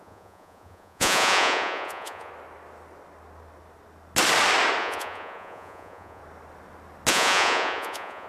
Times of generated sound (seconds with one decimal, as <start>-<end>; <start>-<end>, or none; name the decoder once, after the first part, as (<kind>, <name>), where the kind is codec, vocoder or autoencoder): 0.0-2.3 (vocoder, Vocos); 4.8-6.2; 7.1-8.3